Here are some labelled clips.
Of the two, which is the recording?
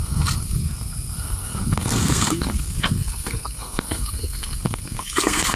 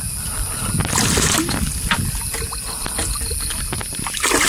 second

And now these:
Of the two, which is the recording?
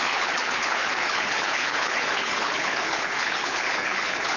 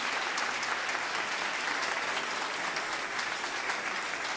second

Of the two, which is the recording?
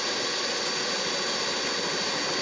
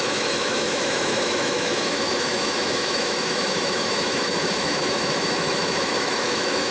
first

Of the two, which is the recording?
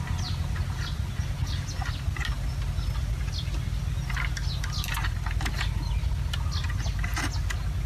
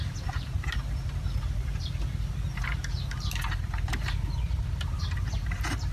first